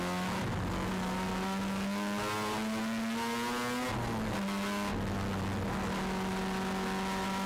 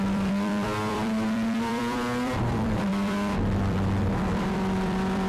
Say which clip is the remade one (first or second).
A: second